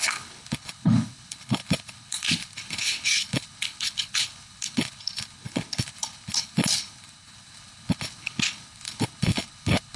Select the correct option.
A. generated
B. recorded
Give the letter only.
A